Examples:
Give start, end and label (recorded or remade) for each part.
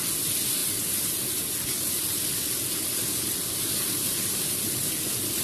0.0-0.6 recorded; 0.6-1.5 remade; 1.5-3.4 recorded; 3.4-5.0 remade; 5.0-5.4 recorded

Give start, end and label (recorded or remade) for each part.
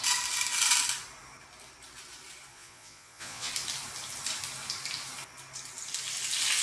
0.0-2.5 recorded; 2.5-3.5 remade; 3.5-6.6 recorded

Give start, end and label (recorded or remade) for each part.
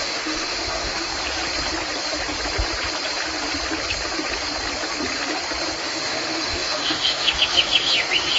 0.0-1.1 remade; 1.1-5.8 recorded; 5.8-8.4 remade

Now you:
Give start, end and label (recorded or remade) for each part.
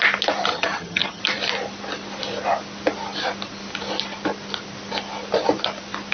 0.0-0.5 recorded; 0.5-1.2 remade; 1.2-6.1 recorded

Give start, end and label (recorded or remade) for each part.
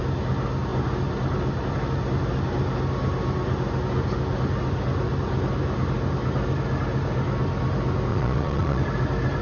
0.0-8.1 recorded; 8.1-8.8 remade; 8.8-9.4 recorded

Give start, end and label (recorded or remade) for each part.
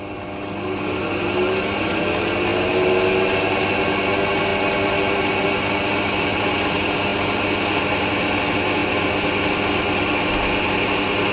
0.0-11.3 recorded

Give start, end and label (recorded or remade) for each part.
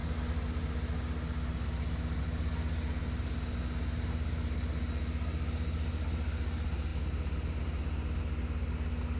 0.0-9.2 recorded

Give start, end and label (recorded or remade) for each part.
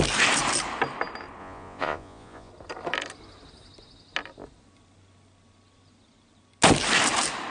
0.0-1.4 recorded; 1.4-2.5 remade; 2.5-7.5 recorded